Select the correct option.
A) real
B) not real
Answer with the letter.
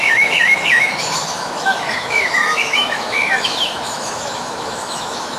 B